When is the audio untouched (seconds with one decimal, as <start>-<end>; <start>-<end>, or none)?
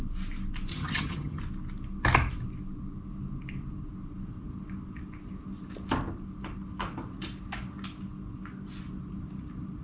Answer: 0.0-0.7; 1.4-9.8